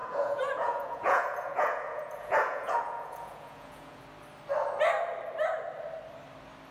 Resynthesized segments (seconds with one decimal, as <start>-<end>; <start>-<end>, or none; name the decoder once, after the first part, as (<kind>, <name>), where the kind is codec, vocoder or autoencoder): 0.0-4.0 (vocoder, Vocos)